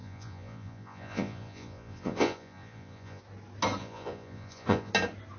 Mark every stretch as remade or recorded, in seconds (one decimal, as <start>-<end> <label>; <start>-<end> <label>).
0.0-3.2 remade; 3.2-3.8 recorded; 3.8-4.9 remade; 4.9-5.4 recorded